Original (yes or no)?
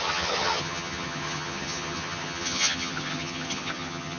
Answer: no